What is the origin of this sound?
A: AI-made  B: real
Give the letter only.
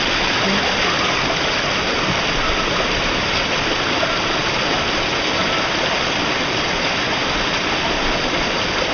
B